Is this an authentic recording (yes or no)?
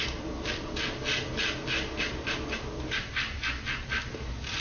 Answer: yes